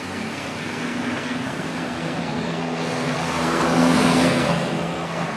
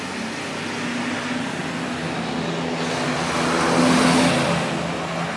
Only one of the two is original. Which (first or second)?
second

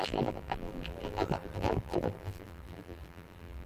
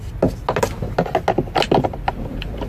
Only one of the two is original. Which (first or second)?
second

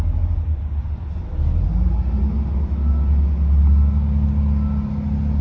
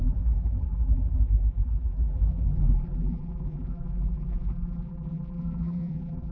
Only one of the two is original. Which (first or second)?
first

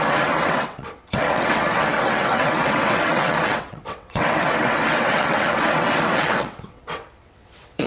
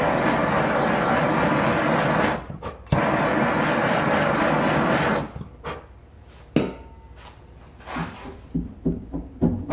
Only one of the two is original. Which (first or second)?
second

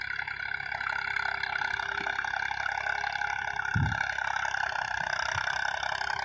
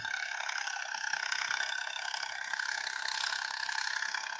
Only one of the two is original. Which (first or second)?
first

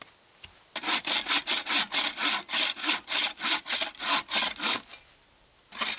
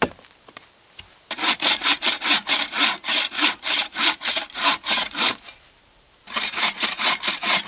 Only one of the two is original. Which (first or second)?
first